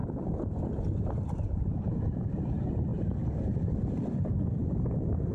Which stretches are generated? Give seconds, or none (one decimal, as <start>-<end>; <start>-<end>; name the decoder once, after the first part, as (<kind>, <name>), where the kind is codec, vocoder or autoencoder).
1.2-2.9 (vocoder, BigVGAN v2)